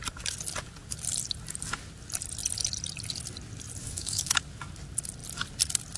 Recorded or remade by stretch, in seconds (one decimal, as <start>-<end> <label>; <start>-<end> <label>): 0.0-3.8 recorded; 3.8-4.4 remade; 4.4-6.0 recorded